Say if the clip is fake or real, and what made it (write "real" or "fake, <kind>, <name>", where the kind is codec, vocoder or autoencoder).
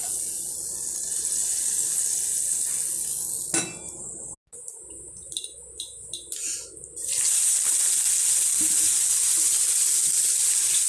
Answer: real